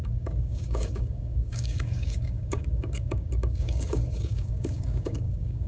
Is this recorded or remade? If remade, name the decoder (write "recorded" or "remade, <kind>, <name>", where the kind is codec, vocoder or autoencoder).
remade, codec, DAC